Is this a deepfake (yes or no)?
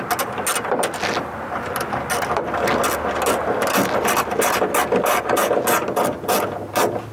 no